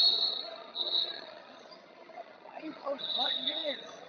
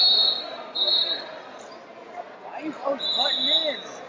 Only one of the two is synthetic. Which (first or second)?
first